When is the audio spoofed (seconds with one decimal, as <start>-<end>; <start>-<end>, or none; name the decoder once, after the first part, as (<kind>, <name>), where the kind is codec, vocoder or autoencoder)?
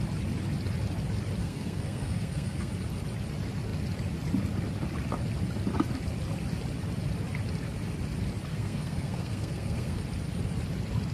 1.4-2.7 (codec, SNAC); 8.5-10.0